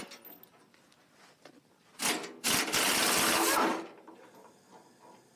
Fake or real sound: real